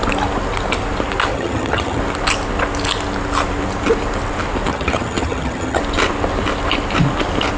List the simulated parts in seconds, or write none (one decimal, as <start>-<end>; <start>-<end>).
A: 1.3-2.0; 4.7-5.8